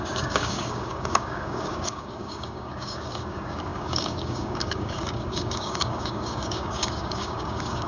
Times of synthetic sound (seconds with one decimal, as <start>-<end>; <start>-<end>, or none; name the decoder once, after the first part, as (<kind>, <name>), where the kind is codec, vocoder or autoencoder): 0.0-7.9 (codec, DAC)